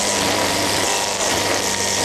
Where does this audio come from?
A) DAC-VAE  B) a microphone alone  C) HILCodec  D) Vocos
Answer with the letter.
B